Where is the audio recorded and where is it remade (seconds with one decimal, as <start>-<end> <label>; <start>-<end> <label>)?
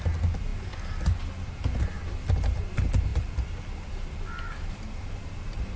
0.0-5.8 recorded